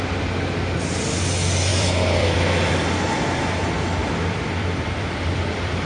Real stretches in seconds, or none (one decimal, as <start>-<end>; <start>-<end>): 0.0-1.7; 3.4-4.0